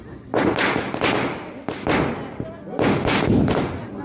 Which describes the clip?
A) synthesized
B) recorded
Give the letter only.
B